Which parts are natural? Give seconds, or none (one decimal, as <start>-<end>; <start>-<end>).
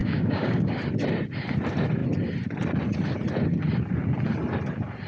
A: 0.8-5.1